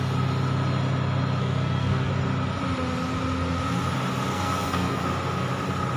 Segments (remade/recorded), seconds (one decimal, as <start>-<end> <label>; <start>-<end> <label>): 0.0-1.4 recorded; 1.4-2.1 remade; 2.1-4.3 recorded; 4.3-5.0 remade; 5.0-6.0 recorded